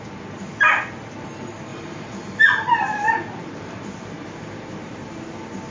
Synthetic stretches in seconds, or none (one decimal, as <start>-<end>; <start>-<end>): 1.7-5.1